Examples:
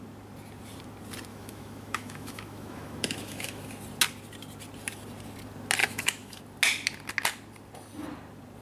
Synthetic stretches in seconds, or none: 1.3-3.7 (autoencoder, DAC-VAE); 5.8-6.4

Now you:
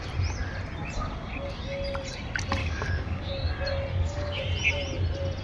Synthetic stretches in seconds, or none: 2.6-3.3 (codec, DAC); 3.9-4.4

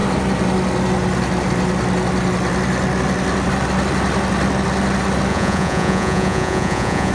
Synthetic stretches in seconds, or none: 5.3-7.1 (vocoder, Vocos)

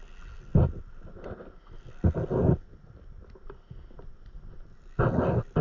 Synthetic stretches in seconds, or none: none

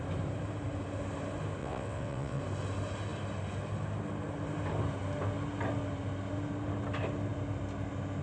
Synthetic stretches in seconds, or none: 1.6-2.4 (vocoder, WaveNeXt)

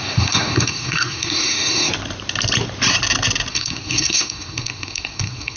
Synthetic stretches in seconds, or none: 0.0-1.9 (codec, SNAC); 3.5-5.6

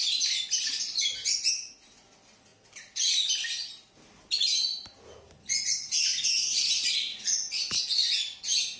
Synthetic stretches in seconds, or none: none

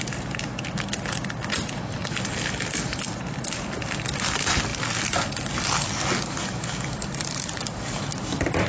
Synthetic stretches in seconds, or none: none